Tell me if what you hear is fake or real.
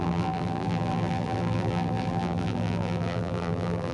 fake